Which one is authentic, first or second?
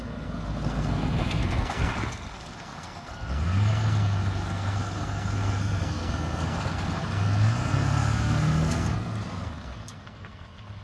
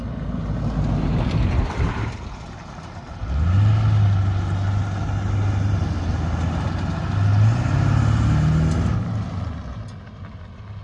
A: second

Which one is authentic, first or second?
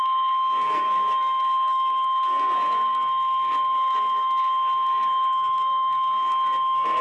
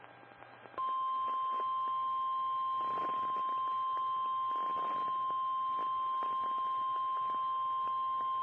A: second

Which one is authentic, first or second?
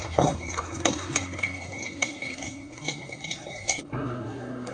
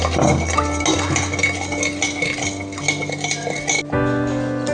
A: second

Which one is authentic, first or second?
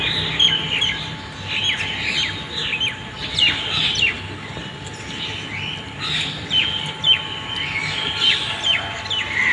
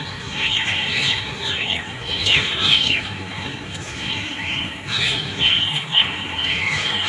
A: first